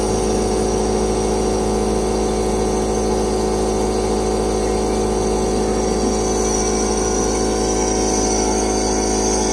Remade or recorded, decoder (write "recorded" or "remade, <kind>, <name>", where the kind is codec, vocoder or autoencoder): recorded